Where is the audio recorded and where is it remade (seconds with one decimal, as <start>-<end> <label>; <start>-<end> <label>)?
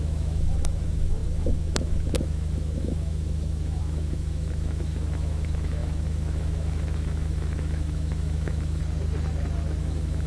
0.0-8.8 remade; 8.8-9.8 recorded; 9.8-10.3 remade